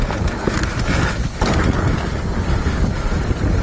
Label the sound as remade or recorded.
recorded